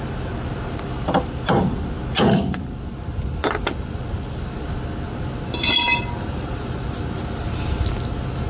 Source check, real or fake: real